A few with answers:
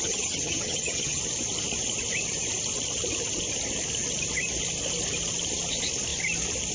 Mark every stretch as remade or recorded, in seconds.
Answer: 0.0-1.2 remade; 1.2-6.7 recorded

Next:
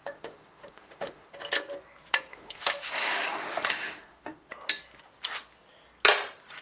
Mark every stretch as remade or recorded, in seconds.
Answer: 0.0-1.3 remade; 1.3-2.3 recorded; 2.3-4.5 remade; 4.5-6.6 recorded

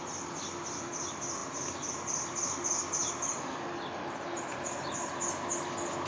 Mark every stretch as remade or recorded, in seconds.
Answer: 0.0-6.1 recorded

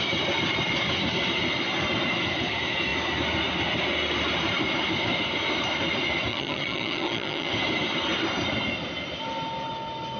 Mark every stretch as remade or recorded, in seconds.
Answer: 0.0-6.3 recorded; 6.3-7.5 remade; 7.5-10.2 recorded

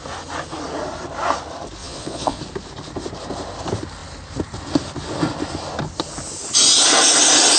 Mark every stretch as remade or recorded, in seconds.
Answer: 0.0-1.8 recorded; 1.8-2.4 remade; 2.4-7.6 recorded

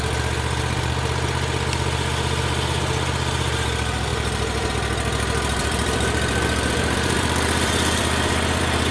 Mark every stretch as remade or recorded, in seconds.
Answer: 0.0-5.6 recorded; 5.6-8.9 remade

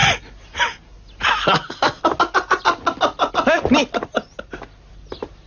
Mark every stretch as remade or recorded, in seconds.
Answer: 0.0-5.5 recorded

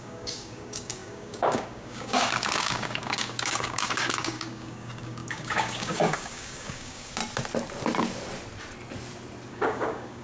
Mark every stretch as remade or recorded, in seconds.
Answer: 0.0-7.2 remade; 7.2-9.5 recorded; 9.5-10.2 remade